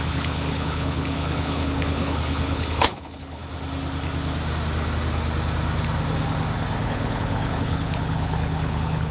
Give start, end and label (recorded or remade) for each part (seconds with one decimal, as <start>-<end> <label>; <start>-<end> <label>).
0.0-3.4 remade; 3.4-6.8 recorded; 6.8-9.1 remade